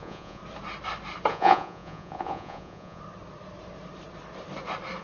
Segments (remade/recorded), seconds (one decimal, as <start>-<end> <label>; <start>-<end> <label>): 0.0-0.4 remade; 0.4-1.3 recorded; 1.3-3.0 remade; 3.0-5.0 recorded